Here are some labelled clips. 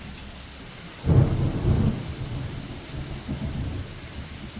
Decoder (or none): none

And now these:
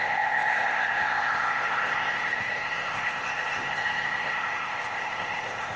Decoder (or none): codec, ZipCodec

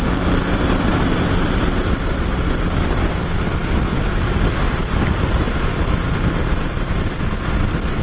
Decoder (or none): none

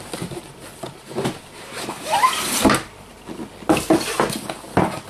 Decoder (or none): none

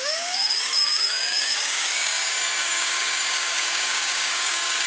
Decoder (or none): codec, DAC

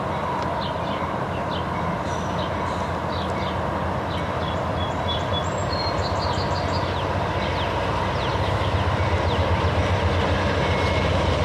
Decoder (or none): none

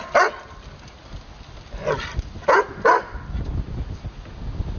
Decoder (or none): none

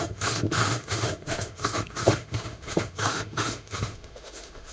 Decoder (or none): autoencoder, DAC-VAE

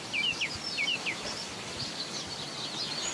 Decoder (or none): none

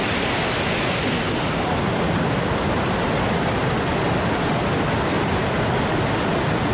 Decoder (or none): none